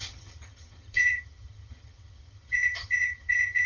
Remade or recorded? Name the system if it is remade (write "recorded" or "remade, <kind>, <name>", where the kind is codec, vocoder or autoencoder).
remade, vocoder, HiFi-GAN